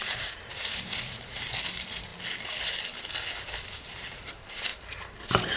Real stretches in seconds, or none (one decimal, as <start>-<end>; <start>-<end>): 2.1-3.3